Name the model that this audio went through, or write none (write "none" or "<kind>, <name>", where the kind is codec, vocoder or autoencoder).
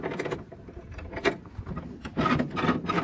none